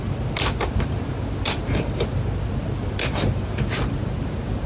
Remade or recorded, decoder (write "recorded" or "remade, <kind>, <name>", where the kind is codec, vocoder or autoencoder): recorded